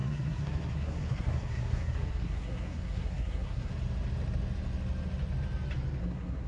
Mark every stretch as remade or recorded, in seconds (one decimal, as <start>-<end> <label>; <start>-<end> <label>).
0.0-3.7 remade; 3.7-6.0 recorded; 6.0-6.5 remade